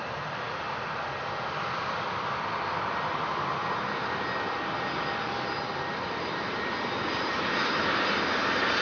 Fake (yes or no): yes